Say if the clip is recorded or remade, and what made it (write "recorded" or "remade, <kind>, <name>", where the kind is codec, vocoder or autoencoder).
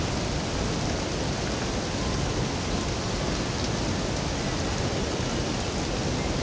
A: recorded